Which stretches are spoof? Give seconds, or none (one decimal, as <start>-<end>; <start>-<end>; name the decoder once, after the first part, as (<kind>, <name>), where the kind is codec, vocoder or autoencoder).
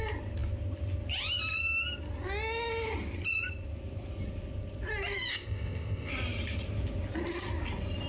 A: 5.3-6.1 (codec, ZipCodec)